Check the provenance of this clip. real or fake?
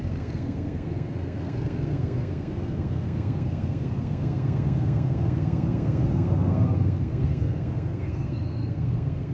fake